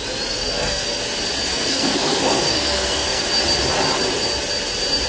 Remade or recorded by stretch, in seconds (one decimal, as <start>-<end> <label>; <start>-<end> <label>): 0.0-0.4 recorded; 0.4-1.0 remade; 1.0-1.5 recorded; 1.5-3.2 remade; 3.2-5.1 recorded

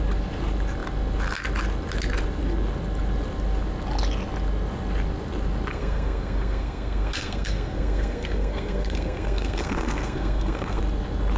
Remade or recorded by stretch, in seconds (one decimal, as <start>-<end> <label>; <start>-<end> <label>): 0.0-5.7 recorded; 5.7-10.8 remade; 10.8-11.4 recorded

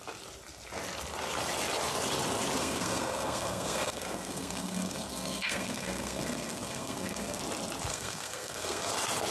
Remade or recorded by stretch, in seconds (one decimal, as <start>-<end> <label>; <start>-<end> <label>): 0.0-2.6 recorded; 2.6-7.4 remade; 7.4-7.9 recorded; 7.9-8.9 remade; 8.9-9.3 recorded

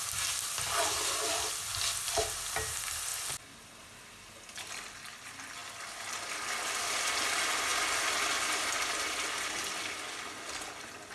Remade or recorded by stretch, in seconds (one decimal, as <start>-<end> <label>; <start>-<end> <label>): 0.0-11.1 recorded

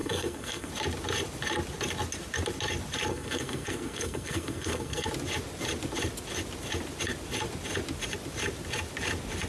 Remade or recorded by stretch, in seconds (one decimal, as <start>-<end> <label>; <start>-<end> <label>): 0.0-0.7 remade; 0.7-3.1 recorded; 3.1-5.1 remade; 5.1-9.5 recorded

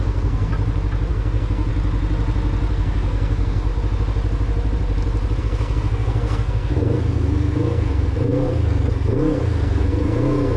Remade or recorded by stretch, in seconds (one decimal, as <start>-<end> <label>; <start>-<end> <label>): 0.0-0.5 remade; 0.5-1.1 recorded; 1.1-1.7 remade; 1.7-2.7 recorded; 2.7-3.7 remade; 3.7-5.4 recorded; 5.4-10.6 remade

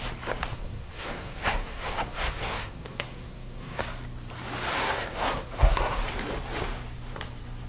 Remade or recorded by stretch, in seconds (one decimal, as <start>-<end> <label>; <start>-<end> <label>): 0.0-0.5 recorded; 0.5-3.8 remade; 3.8-4.7 recorded; 4.7-6.0 remade; 6.0-7.7 recorded

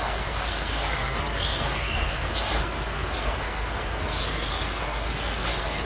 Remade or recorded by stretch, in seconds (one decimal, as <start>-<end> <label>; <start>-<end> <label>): 0.0-5.9 remade